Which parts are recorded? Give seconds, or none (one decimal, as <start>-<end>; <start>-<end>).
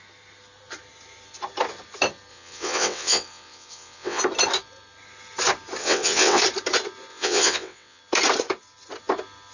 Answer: 0.0-2.3; 4.2-5.8; 6.4-7.1; 8.0-9.5